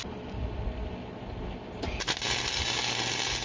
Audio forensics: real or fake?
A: real